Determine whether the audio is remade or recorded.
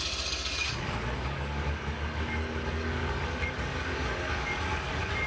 remade